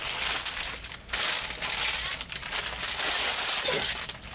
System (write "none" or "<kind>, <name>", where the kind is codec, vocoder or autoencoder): none